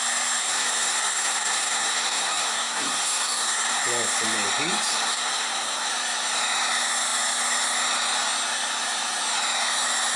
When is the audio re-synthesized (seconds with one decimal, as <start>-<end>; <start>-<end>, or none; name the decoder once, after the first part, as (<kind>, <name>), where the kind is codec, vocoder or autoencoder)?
0.4-3.8 (codec, SNAC); 4.9-5.9